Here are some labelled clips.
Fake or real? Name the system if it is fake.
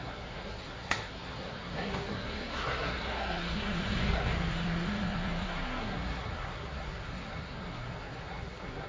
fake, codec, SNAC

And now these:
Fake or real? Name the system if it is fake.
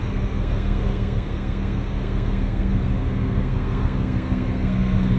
fake, codec, SNAC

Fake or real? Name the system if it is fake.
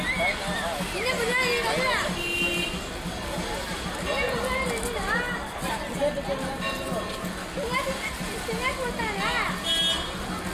real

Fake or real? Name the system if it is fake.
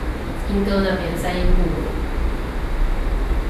real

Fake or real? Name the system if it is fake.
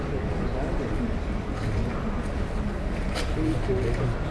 real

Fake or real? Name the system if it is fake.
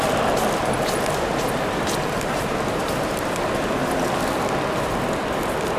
real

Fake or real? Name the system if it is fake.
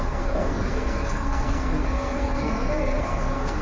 fake, codec, SNAC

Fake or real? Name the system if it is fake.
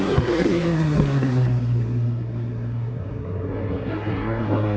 fake, codec, SNAC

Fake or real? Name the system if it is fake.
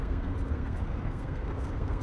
fake, codec, SNAC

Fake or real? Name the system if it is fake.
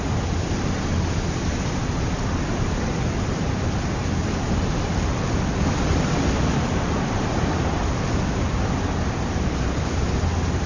real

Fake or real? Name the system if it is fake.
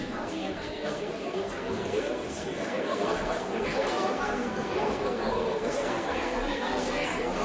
fake, codec, SNAC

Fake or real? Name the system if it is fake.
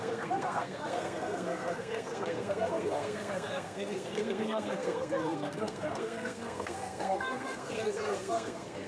fake, codec, SNAC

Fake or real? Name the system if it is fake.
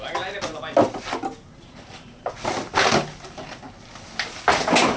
real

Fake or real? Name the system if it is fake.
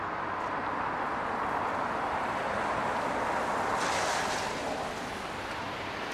real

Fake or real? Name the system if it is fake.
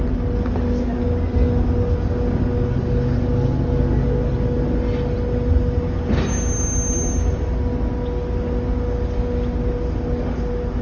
real